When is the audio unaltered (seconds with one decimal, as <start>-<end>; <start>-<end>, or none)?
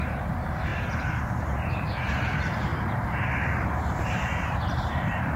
0.7-1.3